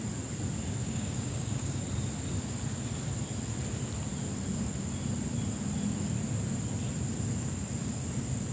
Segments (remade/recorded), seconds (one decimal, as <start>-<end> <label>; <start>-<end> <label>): 0.0-0.8 recorded; 0.8-1.8 remade; 1.8-8.5 recorded

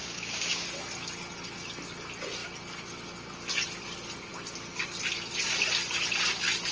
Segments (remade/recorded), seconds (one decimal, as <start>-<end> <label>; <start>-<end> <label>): 0.0-0.7 remade; 0.7-6.7 recorded

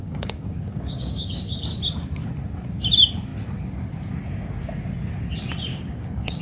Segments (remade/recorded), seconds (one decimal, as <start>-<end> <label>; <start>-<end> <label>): 0.0-1.6 remade; 1.6-5.7 recorded; 5.7-6.4 remade

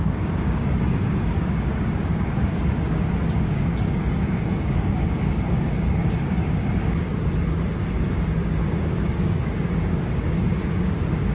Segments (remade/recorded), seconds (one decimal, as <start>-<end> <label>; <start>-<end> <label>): 0.0-7.1 remade; 7.1-7.8 recorded; 7.8-11.3 remade

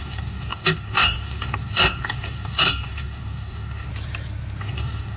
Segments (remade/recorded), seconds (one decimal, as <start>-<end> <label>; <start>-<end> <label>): 0.0-3.9 remade; 3.9-4.6 recorded; 4.6-5.2 remade